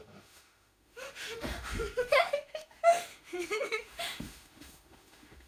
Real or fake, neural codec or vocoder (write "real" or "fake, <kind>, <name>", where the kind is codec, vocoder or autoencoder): fake, autoencoder, DAC-VAE